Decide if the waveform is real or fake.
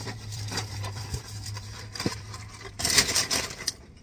fake